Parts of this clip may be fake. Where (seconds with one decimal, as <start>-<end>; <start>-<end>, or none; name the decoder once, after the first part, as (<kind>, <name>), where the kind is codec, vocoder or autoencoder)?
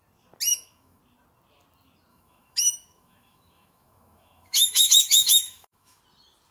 0.5-1.0 (autoencoder, DAC-VAE); 2.1-6.0